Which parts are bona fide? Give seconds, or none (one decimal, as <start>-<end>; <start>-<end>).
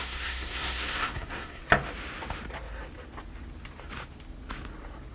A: 1.6-5.1